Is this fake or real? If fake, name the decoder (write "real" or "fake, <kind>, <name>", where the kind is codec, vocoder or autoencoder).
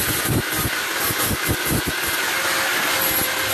real